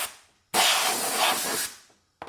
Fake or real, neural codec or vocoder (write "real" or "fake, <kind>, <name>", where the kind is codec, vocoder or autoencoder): real